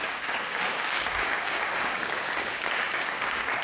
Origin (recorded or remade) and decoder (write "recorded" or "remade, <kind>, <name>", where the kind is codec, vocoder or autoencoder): remade, codec, DAC